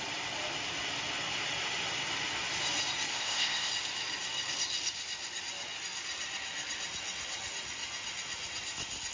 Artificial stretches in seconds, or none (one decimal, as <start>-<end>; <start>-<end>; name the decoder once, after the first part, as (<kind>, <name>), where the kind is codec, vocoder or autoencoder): 3.1-3.7 (codec, ZipCodec)